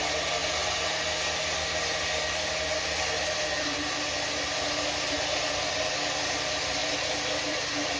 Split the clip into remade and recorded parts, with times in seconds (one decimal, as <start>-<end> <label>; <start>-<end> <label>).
0.0-6.8 recorded; 6.8-8.0 remade